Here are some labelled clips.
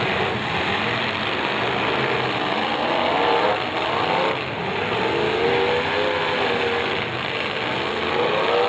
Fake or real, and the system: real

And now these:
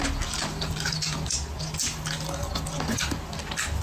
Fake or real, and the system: real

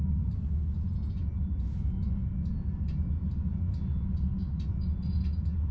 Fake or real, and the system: real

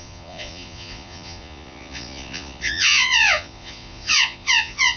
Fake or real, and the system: fake, vocoder, Vocos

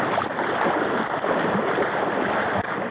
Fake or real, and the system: real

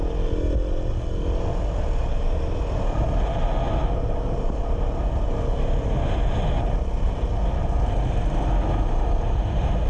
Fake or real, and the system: real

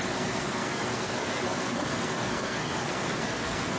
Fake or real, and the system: fake, codec, SNAC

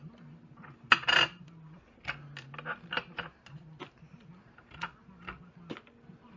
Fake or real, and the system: real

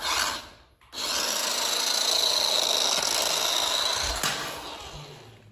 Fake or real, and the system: real